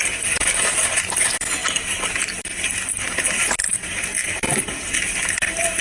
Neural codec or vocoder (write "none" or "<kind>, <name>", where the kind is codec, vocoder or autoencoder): none